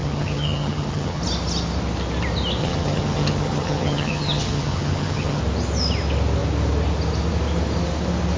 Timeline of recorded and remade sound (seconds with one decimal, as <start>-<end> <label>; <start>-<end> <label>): 0.0-1.2 remade; 1.2-2.6 recorded; 2.6-5.4 remade; 5.4-8.4 recorded